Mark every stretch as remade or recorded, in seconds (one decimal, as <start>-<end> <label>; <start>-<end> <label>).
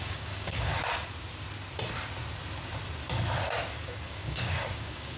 0.0-0.7 remade; 0.7-3.8 recorded; 3.8-5.2 remade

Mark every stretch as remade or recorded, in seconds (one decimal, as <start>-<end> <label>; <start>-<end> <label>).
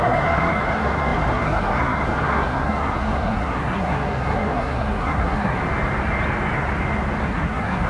0.0-5.6 remade; 5.6-7.2 recorded; 7.2-7.9 remade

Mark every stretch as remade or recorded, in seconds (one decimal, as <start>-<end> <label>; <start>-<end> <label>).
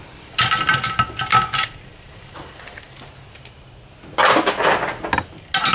0.0-5.7 recorded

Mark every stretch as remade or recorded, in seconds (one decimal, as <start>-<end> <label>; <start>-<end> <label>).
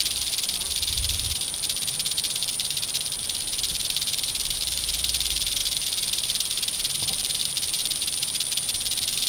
0.0-9.3 remade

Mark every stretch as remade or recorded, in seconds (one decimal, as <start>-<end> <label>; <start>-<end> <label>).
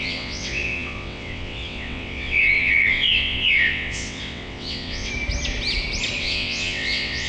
0.0-5.1 remade; 5.1-6.2 recorded; 6.2-7.3 remade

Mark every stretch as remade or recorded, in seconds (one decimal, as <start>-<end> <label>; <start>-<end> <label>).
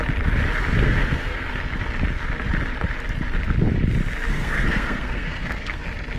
0.0-0.8 recorded; 0.8-1.5 remade; 1.5-4.3 recorded; 4.3-5.8 remade; 5.8-6.2 recorded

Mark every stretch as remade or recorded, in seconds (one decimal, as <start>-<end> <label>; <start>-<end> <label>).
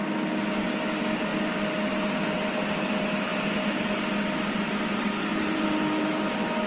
0.0-3.3 recorded; 3.3-3.8 remade; 3.8-5.3 recorded; 5.3-6.2 remade; 6.2-6.7 recorded